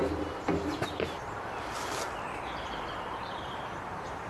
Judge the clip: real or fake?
fake